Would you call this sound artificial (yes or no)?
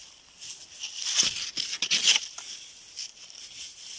no